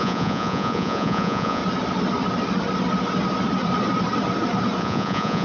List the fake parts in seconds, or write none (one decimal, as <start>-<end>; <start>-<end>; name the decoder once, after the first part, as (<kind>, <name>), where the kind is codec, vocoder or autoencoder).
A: 0.0-1.6 (vocoder, Vocos); 4.8-5.4